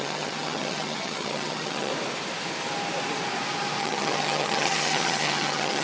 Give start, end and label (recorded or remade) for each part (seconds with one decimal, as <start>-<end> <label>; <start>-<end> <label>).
0.0-1.9 remade; 1.9-3.8 recorded; 3.8-5.8 remade